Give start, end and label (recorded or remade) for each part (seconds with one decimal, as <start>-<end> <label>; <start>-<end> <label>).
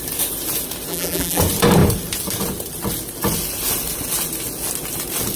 0.0-0.9 recorded; 0.9-1.4 remade; 1.4-5.4 recorded